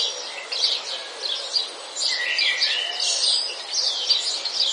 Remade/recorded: recorded